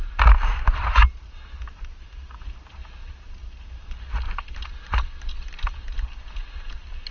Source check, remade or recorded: recorded